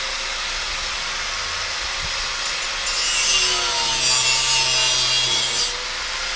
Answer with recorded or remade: recorded